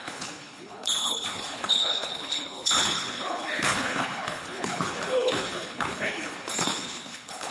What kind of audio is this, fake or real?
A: fake